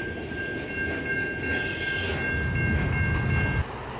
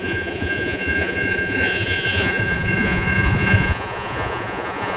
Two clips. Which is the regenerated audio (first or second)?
second